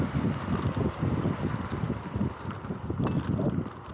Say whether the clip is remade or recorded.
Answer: recorded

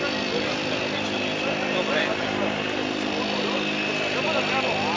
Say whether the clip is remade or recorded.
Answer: recorded